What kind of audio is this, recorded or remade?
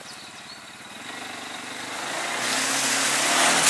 recorded